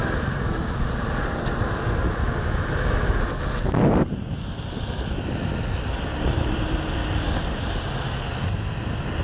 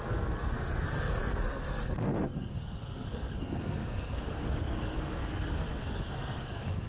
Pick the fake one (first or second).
second